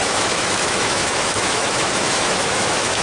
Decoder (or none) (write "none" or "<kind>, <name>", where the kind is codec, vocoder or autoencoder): autoencoder, DAC-VAE